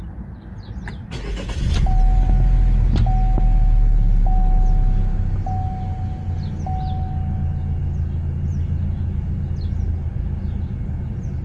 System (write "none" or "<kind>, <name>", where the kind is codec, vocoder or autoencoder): none